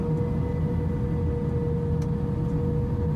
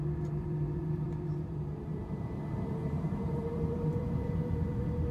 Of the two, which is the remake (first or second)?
second